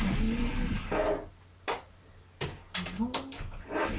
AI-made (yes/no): no